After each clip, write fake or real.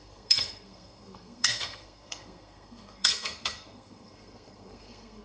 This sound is fake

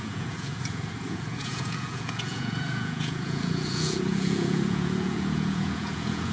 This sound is fake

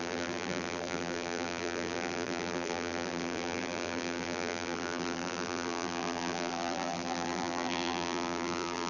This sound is fake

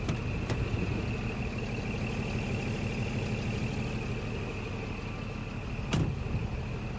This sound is real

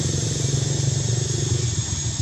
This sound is real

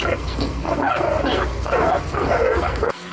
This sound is fake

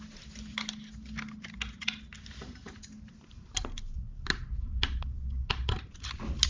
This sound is real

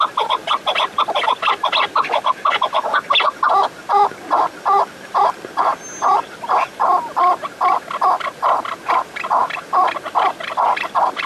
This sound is real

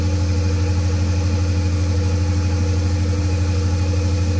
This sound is real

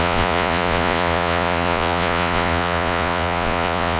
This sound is fake